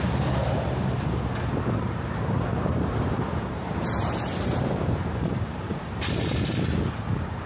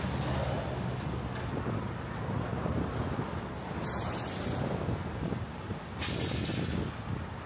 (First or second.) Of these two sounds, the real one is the second